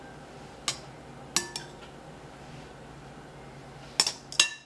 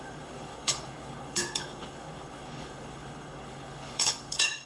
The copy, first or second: second